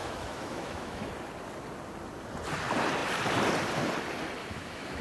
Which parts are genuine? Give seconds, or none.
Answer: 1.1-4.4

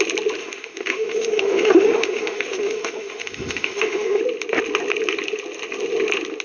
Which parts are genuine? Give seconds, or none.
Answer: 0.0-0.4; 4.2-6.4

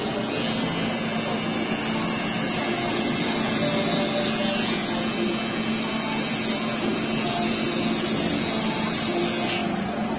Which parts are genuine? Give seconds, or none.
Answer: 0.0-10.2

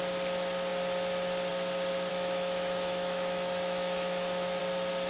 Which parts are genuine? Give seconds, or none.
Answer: 0.0-2.1; 4.6-5.1

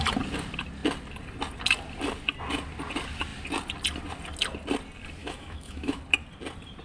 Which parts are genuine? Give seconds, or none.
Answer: 0.0-5.2; 6.0-6.8

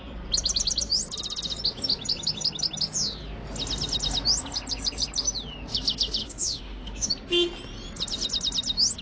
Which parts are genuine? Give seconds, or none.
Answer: 0.0-6.2; 7.1-9.0

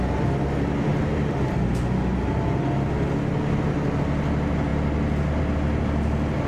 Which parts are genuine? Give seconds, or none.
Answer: 0.0-6.5